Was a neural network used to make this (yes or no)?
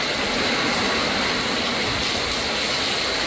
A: no